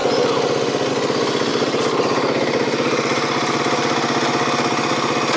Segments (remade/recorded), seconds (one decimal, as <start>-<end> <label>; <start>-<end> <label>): 0.0-1.5 recorded; 1.5-3.6 remade; 3.6-5.4 recorded